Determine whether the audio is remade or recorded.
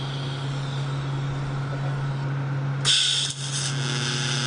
recorded